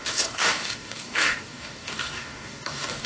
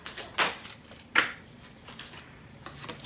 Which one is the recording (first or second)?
second